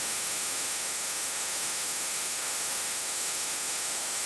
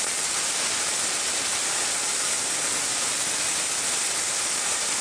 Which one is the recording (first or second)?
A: second